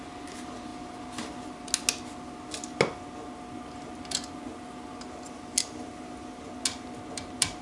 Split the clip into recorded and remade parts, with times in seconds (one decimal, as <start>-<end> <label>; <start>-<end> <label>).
0.0-7.6 recorded